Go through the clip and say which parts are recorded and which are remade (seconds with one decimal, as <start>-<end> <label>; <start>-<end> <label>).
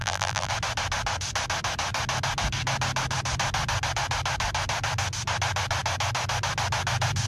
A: 0.0-0.5 remade; 0.5-7.3 recorded